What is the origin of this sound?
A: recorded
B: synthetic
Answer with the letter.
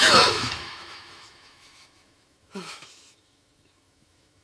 B